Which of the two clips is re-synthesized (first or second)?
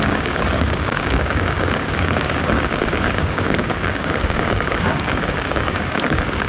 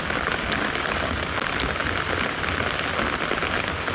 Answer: first